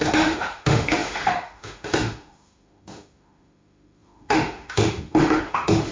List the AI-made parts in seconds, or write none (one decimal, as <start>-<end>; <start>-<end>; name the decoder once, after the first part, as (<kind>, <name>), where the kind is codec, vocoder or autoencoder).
0.0-5.9 (autoencoder, DAC-VAE)